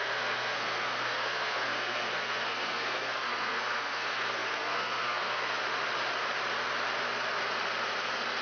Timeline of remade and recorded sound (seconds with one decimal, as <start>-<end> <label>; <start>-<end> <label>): 0.0-5.6 remade; 5.6-8.4 recorded